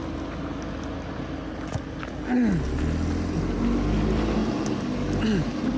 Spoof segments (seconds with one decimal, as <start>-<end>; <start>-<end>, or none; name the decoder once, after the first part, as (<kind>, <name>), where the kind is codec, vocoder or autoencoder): none